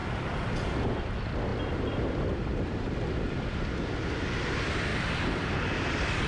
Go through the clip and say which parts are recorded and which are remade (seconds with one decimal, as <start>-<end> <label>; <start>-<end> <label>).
0.0-0.5 remade; 0.5-1.5 recorded; 1.5-3.7 remade; 3.7-4.9 recorded; 4.9-6.3 remade